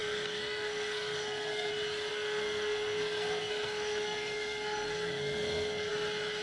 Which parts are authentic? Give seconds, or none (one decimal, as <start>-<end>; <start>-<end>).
1.7-2.1; 5.9-6.4